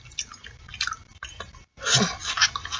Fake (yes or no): no